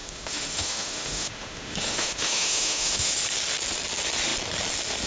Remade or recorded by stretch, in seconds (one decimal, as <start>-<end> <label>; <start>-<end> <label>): 0.0-3.1 remade; 3.1-5.1 recorded